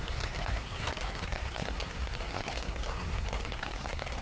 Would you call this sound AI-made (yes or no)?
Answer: yes